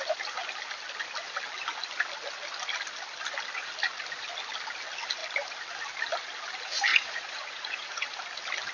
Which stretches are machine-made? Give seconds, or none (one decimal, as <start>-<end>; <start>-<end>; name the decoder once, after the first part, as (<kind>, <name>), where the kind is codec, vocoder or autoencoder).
6.9-8.2 (vocoder, Vocos)